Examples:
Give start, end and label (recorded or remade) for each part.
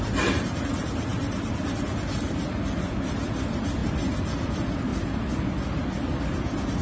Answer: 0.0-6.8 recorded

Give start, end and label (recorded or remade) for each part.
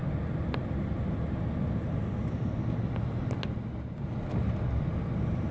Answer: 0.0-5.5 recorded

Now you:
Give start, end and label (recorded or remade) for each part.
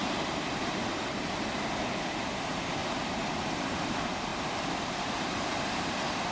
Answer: 0.0-0.8 remade; 0.8-2.2 recorded; 2.2-2.8 remade; 2.8-3.5 recorded; 3.5-4.3 remade; 4.3-4.9 recorded; 4.9-6.3 remade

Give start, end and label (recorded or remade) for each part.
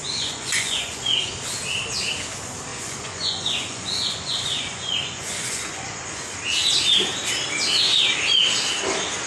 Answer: 0.0-1.3 remade; 1.3-2.7 recorded; 2.7-6.3 remade; 6.3-9.3 recorded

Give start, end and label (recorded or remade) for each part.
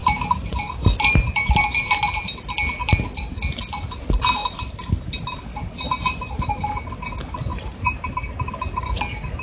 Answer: 0.0-2.0 remade; 2.0-4.4 recorded; 4.4-4.9 remade; 4.9-5.5 recorded; 5.5-6.4 remade; 6.4-7.5 recorded; 7.5-8.5 remade; 8.5-9.4 recorded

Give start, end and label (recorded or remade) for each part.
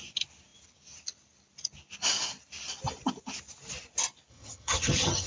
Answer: 0.0-4.3 recorded; 4.3-5.3 remade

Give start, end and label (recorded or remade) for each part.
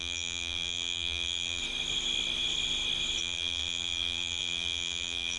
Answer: 0.0-1.6 remade; 1.6-3.2 recorded; 3.2-5.4 remade